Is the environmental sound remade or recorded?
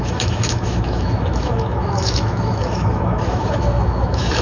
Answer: remade